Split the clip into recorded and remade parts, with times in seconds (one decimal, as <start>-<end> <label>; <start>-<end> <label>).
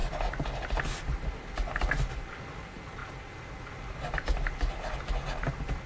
0.0-5.9 recorded